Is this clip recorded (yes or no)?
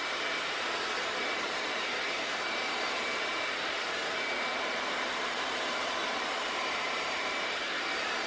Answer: no